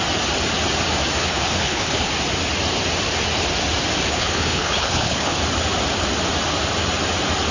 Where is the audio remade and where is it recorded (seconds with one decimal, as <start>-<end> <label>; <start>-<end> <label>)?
0.0-1.2 recorded; 1.2-2.1 remade; 2.1-4.1 recorded; 4.1-5.4 remade; 5.4-7.5 recorded